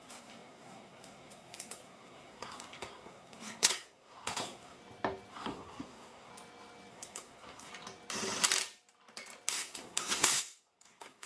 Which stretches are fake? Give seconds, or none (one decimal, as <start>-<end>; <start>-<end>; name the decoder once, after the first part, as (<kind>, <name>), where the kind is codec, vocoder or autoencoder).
0.0-4.8 (codec, SNAC); 5.3-6.3; 6.9-7.7; 9.5-11.3